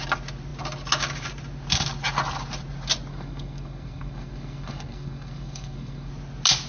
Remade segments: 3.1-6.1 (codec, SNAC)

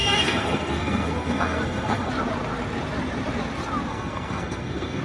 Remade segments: 0.0-2.1 (codec, SNAC); 3.9-5.0

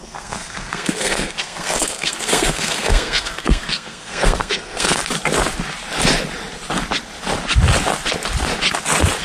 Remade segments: 0.0-5.0 (codec, SNAC)

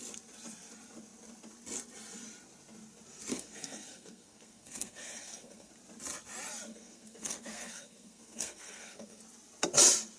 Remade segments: 3.3-5.7 (codec, SNAC); 6.7-9.2

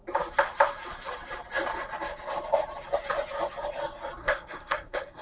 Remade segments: 4.2-5.2 (codec, SNAC)